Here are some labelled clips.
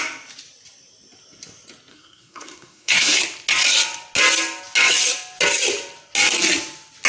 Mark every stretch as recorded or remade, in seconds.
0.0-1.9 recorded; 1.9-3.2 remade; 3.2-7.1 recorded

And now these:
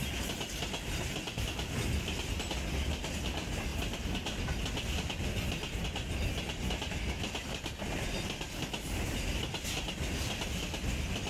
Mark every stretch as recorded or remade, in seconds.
0.0-3.7 recorded; 3.7-4.4 remade; 4.4-11.3 recorded

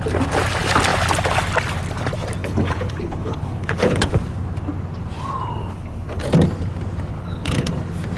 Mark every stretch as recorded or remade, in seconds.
0.0-2.4 recorded; 2.4-4.1 remade; 4.1-5.6 recorded; 5.6-6.2 remade; 6.2-7.1 recorded; 7.1-7.7 remade; 7.7-8.2 recorded

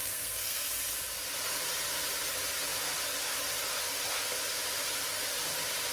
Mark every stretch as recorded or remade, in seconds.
0.0-0.7 remade; 0.7-5.9 recorded

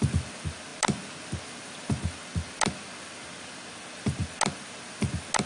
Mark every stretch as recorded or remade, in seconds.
0.0-5.5 recorded

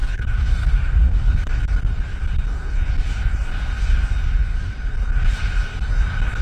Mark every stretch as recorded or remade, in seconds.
0.0-1.6 remade; 1.6-6.4 recorded

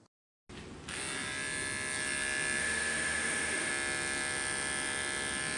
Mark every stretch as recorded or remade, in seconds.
0.0-2.6 recorded; 2.6-3.7 remade; 3.7-5.6 recorded